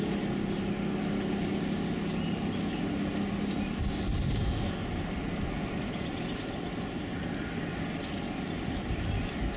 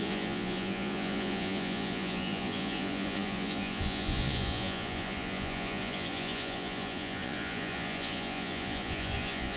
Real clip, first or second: first